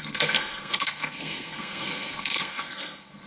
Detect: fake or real fake